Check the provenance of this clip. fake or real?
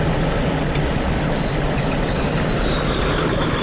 real